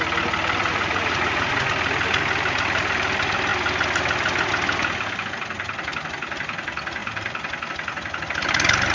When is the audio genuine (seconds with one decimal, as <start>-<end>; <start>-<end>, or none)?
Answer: 0.0-0.6; 1.7-8.9